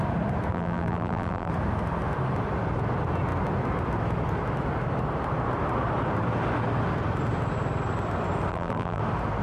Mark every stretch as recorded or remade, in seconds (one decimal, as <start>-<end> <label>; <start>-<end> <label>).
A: 0.0-0.5 recorded; 0.5-1.5 remade; 1.5-8.5 recorded; 8.5-9.0 remade; 9.0-9.4 recorded